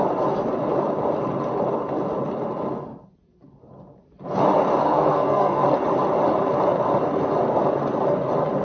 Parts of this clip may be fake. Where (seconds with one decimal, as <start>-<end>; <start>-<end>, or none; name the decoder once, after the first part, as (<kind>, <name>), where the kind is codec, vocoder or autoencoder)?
4.8-5.6 (codec, SNAC)